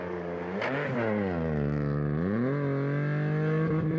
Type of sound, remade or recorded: recorded